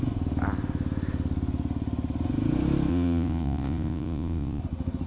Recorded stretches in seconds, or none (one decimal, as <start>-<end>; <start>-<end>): 0.0-2.9; 4.6-5.1